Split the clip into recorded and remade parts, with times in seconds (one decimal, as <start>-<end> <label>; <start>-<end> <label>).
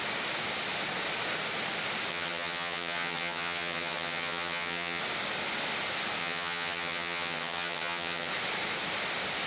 0.0-2.1 recorded; 2.1-5.0 remade; 5.0-6.2 recorded; 6.2-8.3 remade; 8.3-9.5 recorded